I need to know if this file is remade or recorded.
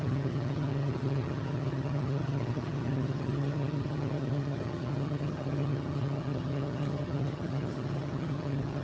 remade